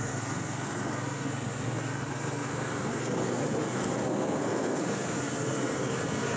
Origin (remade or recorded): remade